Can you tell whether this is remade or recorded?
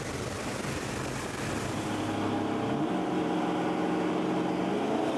recorded